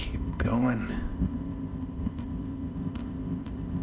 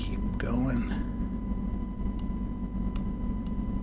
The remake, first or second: first